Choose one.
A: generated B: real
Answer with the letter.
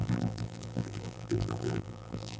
A